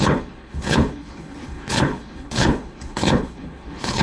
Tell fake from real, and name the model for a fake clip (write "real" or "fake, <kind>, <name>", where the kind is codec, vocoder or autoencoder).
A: fake, codec, HILCodec